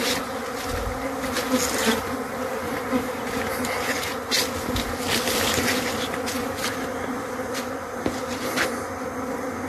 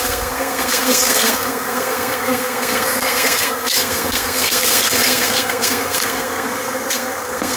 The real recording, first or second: first